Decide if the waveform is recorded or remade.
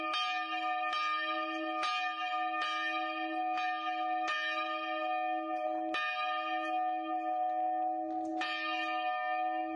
recorded